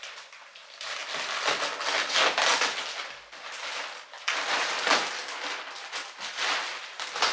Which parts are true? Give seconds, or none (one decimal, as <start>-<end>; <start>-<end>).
0.0-7.3